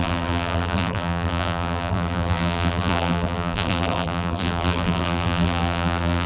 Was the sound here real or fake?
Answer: fake